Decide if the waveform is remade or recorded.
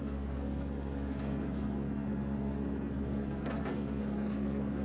remade